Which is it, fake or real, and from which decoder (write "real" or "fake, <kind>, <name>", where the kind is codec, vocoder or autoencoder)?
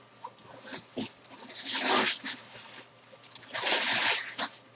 real